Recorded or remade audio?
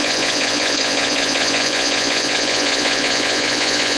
remade